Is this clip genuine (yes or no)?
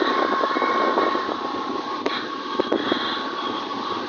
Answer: yes